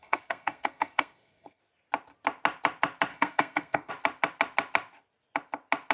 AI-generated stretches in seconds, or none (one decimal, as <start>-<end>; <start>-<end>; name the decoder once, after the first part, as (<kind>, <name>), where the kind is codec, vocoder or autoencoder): 0.0-1.6 (codec, SNAC); 3.1-3.9